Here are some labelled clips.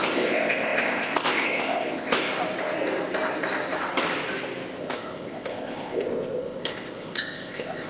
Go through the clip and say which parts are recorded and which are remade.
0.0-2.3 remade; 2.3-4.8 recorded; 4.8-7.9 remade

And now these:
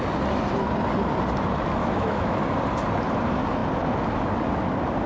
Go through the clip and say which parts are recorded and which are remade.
0.0-1.8 recorded; 1.8-2.4 remade; 2.4-5.1 recorded

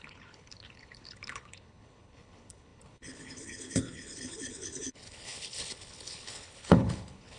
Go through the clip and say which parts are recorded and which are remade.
0.0-7.4 remade

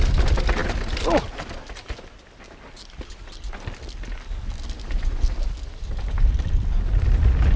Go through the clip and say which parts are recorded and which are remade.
0.0-7.6 recorded

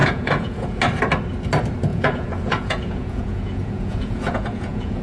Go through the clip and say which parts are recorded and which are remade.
0.0-0.8 remade; 0.8-1.9 recorded; 1.9-5.0 remade

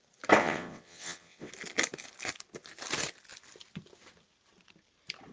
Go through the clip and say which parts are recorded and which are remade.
0.0-0.4 recorded; 0.4-1.5 remade; 1.5-5.3 recorded